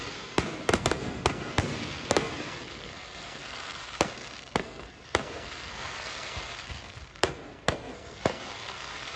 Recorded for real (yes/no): no